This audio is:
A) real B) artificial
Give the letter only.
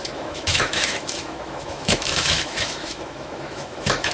B